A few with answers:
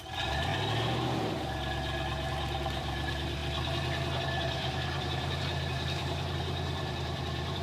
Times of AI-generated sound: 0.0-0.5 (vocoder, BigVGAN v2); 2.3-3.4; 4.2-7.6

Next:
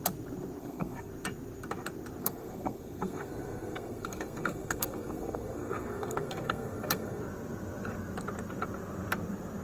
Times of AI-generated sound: 0.6-1.1 (codec, SNAC); 2.2-7.2

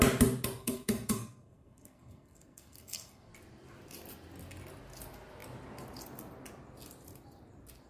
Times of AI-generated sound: 0.6-3.3 (codec, SNAC)

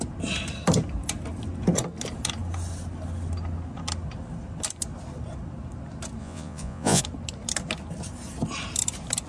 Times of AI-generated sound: 6.2-7.0 (vocoder, Vocos)